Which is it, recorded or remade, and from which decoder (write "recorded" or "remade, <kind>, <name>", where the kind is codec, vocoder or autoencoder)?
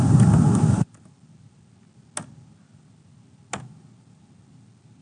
recorded